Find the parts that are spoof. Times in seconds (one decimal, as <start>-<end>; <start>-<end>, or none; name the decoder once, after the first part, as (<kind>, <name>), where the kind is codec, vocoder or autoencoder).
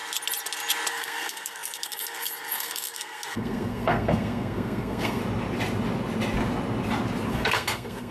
0.9-5.2 (codec, SNAC); 7.3-8.1